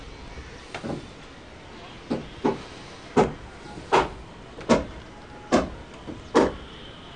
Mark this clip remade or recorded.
recorded